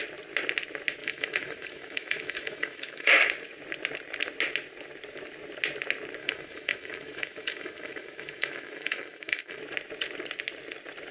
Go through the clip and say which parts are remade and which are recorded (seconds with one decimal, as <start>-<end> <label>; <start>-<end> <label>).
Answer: 0.0-1.0 recorded; 1.0-3.1 remade; 3.1-6.2 recorded; 6.2-9.6 remade; 9.6-11.1 recorded